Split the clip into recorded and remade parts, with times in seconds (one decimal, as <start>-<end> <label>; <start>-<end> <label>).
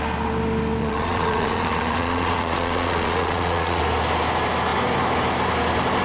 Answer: 0.0-0.8 recorded; 0.8-3.8 remade; 3.8-6.0 recorded